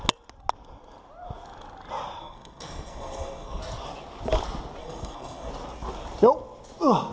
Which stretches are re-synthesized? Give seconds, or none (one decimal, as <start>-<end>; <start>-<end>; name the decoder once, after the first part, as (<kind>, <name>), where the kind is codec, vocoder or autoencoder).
2.2-3.6 (codec, SNAC); 4.8-5.5